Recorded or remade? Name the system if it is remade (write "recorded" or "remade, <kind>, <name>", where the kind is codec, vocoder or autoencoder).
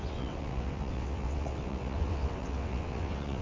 remade, vocoder, WaveNeXt